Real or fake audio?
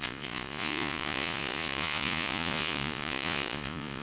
fake